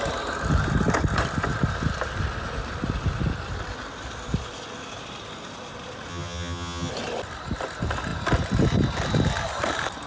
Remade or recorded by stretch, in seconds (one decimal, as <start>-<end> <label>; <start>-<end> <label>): 0.0-6.1 recorded; 6.1-6.9 remade; 6.9-10.1 recorded